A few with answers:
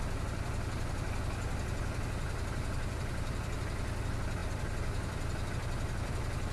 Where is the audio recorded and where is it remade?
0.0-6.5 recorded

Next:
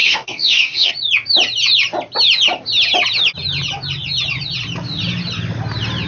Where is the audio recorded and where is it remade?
0.0-0.9 remade; 0.9-6.1 recorded